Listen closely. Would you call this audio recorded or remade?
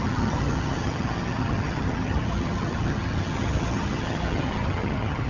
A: remade